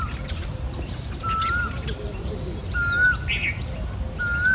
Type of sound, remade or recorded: recorded